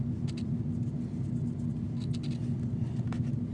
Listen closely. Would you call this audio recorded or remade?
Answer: recorded